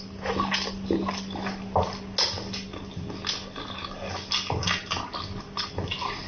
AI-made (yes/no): no